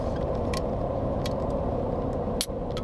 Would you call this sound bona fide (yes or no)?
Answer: yes